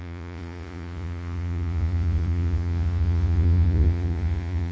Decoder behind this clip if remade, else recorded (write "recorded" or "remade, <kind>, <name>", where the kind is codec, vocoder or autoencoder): remade, vocoder, Vocos